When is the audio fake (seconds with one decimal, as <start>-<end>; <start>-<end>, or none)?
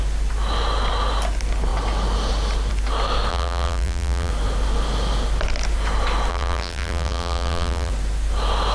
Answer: 3.3-4.3; 6.3-7.9